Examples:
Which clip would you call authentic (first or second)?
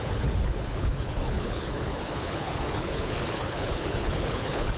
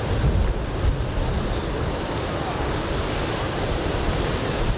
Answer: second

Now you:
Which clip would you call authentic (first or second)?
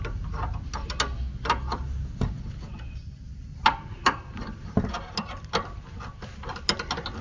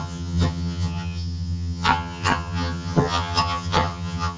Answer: first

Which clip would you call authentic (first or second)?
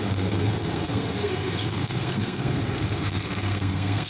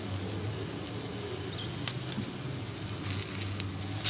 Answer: second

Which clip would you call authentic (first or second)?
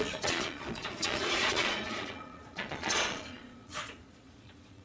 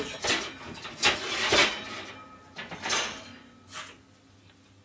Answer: second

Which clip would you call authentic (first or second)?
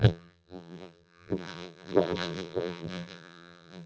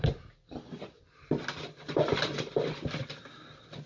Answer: second